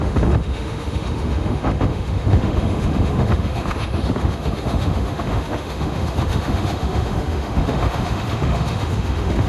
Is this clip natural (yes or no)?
no